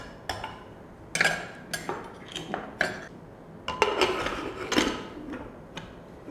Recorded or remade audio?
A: recorded